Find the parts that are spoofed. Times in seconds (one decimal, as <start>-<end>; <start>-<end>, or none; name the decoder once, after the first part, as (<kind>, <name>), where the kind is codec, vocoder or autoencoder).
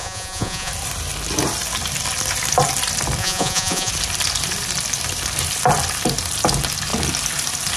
0.0-0.7 (vocoder, Vocos); 3.2-3.9